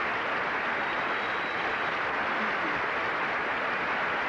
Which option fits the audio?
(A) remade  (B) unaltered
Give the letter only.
B